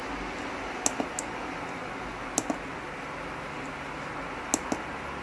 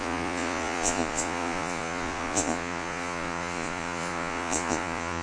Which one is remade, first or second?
second